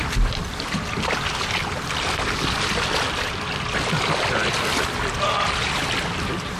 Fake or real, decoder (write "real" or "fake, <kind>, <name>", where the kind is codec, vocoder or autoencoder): real